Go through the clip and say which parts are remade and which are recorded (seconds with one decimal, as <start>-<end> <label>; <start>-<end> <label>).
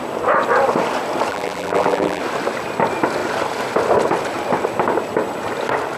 0.0-1.3 recorded; 1.3-2.2 remade; 2.2-6.0 recorded